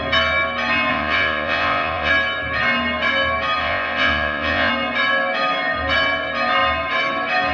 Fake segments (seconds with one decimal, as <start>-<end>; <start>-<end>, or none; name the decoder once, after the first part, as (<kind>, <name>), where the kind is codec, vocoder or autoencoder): 0.9-2.1 (vocoder, Vocos); 3.6-4.7